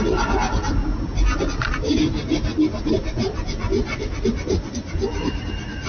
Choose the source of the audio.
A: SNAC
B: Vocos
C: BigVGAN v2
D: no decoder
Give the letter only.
D